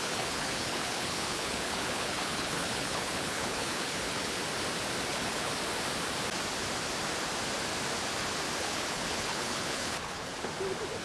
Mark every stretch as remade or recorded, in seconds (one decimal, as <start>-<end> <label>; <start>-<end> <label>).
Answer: 0.0-4.4 remade; 4.4-5.1 recorded; 5.1-5.5 remade; 5.5-8.6 recorded; 8.6-10.3 remade; 10.3-11.0 recorded